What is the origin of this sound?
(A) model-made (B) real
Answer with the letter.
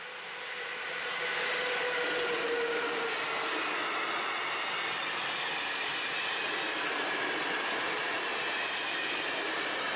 B